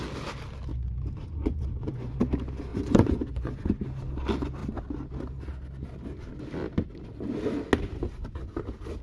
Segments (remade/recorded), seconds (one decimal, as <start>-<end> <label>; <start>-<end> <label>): 0.0-0.7 recorded; 0.7-2.2 remade; 2.2-2.7 recorded; 2.7-3.7 remade; 3.7-9.0 recorded